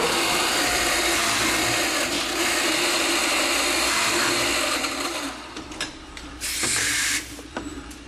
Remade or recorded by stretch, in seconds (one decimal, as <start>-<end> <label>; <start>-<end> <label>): 0.0-8.1 remade